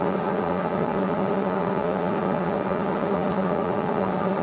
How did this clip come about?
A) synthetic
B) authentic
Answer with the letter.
A